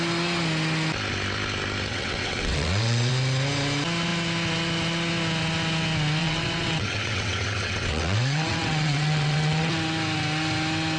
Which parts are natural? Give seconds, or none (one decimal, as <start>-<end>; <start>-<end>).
0.0-1.9; 3.1-6.2; 9.7-11.0